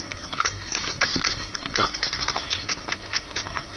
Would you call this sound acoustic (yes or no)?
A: no